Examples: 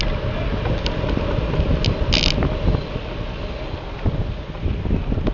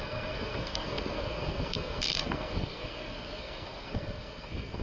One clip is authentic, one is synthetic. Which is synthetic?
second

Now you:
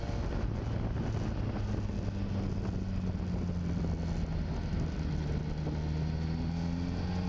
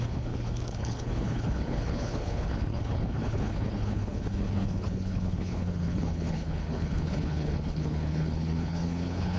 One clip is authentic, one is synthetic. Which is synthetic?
second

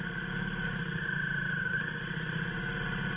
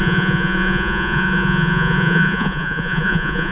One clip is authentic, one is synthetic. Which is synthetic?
second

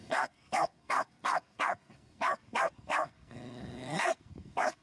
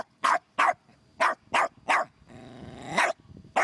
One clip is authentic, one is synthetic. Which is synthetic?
first